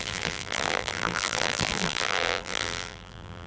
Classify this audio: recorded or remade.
remade